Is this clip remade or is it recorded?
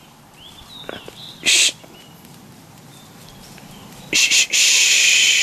remade